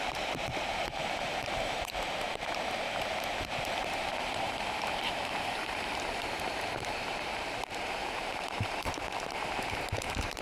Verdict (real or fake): fake